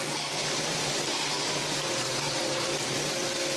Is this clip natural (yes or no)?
yes